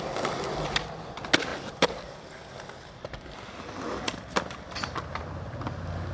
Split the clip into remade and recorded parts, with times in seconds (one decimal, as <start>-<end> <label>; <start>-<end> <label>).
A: 0.0-1.5 recorded; 1.5-5.2 remade; 5.2-6.1 recorded